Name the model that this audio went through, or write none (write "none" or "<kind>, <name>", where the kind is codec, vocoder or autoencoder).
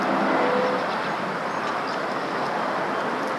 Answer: none